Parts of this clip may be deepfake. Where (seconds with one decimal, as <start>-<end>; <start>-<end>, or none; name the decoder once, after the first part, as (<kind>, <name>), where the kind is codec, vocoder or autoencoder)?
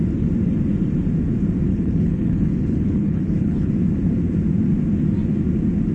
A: 1.7-3.7 (codec, HILCodec)